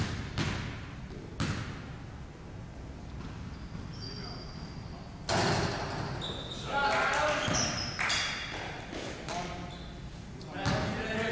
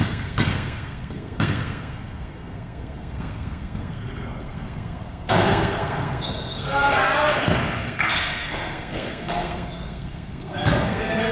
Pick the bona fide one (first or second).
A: first